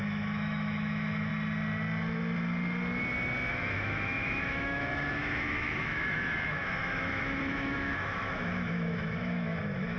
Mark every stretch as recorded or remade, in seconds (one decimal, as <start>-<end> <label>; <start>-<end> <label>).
0.0-1.3 remade; 1.3-3.5 recorded; 3.5-10.0 remade